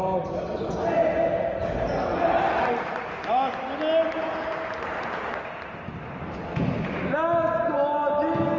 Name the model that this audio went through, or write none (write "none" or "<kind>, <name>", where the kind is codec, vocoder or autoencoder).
none